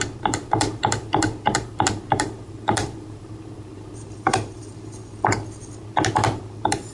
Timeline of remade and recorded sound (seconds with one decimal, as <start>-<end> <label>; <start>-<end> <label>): 0.0-5.1 remade; 5.1-6.5 recorded; 6.5-6.9 remade

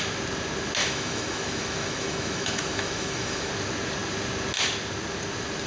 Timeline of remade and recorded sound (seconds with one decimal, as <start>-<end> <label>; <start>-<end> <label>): 0.0-0.8 recorded; 0.8-3.5 remade; 3.5-5.7 recorded

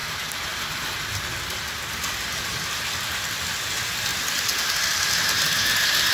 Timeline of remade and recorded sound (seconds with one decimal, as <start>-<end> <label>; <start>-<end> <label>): 0.0-6.1 recorded

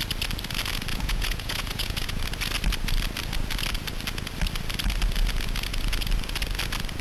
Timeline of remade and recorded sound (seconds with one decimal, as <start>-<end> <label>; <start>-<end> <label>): 0.0-0.9 recorded; 0.9-2.2 remade; 2.2-7.0 recorded